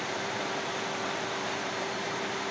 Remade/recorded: remade